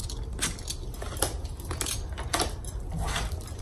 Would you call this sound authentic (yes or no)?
yes